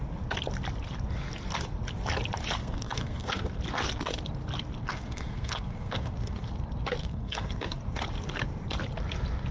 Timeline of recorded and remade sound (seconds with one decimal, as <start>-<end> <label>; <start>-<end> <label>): 0.0-2.6 recorded; 2.6-3.6 remade; 3.6-4.9 recorded; 4.9-6.1 remade; 6.1-7.0 recorded; 7.0-7.8 remade; 7.8-9.5 recorded